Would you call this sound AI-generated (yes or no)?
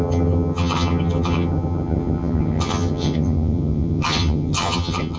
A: yes